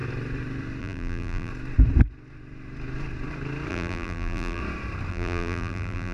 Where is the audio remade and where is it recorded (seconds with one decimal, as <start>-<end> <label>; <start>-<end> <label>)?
0.0-0.8 recorded; 0.8-1.5 remade; 1.5-3.7 recorded; 3.7-4.6 remade; 4.6-5.1 recorded; 5.1-6.1 remade